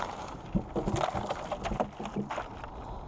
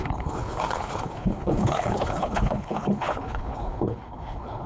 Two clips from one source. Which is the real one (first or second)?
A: first